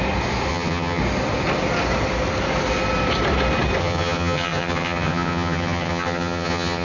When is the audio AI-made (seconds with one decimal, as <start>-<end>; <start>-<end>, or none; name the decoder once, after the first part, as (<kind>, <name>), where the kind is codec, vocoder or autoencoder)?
0.5-1.0 (vocoder, HiFi-GAN); 3.8-6.8